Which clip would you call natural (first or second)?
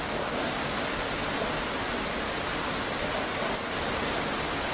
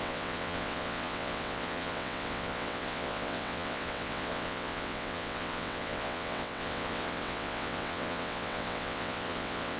first